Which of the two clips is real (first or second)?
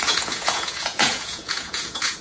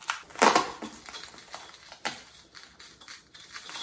second